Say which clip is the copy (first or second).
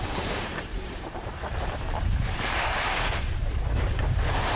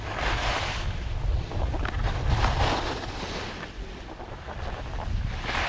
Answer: first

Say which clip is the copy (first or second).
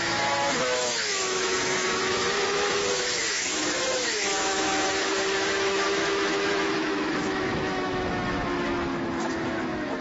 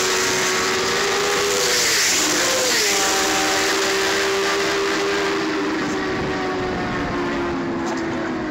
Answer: first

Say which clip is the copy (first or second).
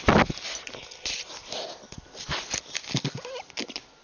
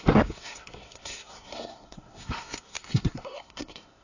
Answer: second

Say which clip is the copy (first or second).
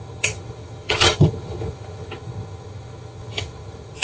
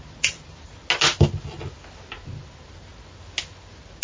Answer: first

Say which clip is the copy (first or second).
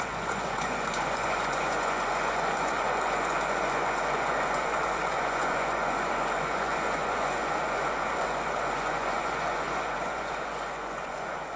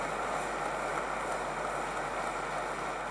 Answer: first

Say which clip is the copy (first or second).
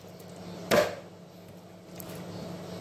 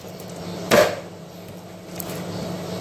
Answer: second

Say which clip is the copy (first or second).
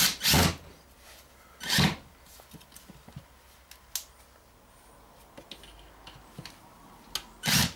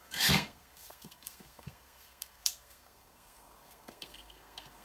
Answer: second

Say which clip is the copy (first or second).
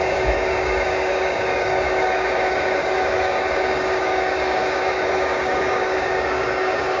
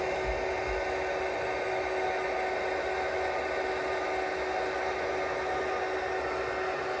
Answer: first